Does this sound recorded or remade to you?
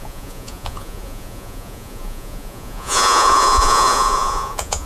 remade